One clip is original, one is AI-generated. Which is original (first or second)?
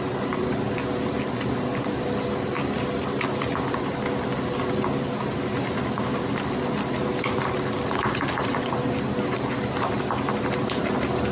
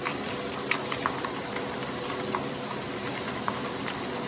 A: first